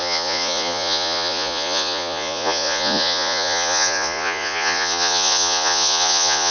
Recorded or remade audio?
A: remade